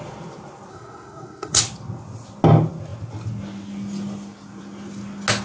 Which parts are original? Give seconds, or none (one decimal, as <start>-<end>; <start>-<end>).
0.0-0.7; 1.6-5.4